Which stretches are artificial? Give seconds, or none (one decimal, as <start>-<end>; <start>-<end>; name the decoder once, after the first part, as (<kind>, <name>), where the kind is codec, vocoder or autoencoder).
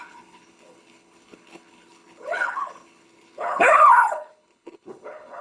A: 0.0-5.4 (codec, HILCodec)